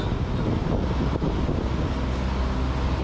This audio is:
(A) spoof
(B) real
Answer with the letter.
B